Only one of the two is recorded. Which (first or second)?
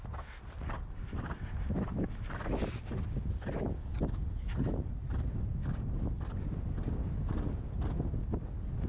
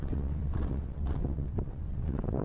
first